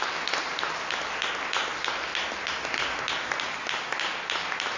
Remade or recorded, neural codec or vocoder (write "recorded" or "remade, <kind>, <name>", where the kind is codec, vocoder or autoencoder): recorded